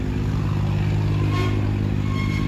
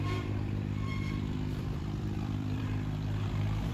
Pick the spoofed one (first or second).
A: second